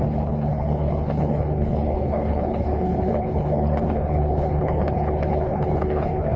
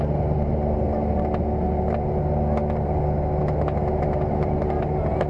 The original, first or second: second